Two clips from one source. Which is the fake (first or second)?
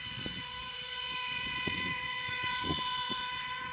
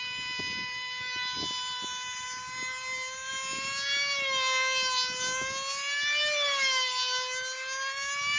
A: first